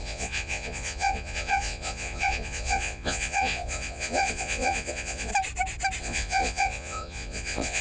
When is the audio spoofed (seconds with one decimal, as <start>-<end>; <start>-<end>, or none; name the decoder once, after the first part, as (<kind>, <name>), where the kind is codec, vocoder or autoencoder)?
0.0-5.3 (vocoder, Vocos); 6.0-7.8